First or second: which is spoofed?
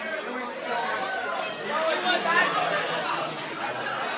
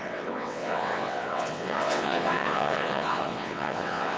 second